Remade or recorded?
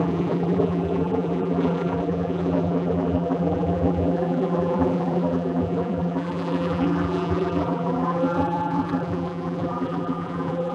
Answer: remade